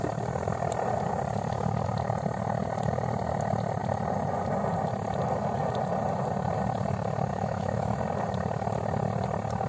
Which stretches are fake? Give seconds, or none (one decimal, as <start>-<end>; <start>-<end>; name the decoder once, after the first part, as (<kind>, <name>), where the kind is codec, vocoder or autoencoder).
7.3-8.0 (autoencoder, DAC-VAE)